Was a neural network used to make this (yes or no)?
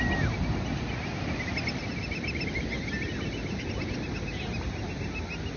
no